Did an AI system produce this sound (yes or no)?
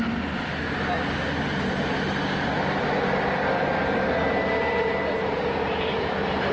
no